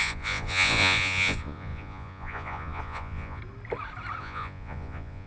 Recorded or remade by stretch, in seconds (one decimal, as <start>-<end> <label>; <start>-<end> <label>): 0.0-3.4 remade; 3.4-4.2 recorded; 4.2-5.3 remade